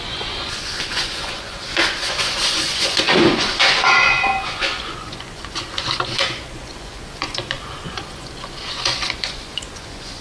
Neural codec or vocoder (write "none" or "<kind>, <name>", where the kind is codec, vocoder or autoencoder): vocoder, Vocos